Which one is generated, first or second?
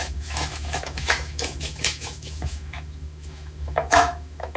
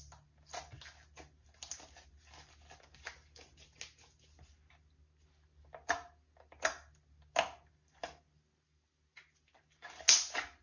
first